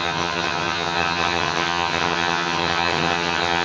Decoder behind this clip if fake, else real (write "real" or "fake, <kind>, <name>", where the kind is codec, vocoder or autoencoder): fake, vocoder, HiFi-GAN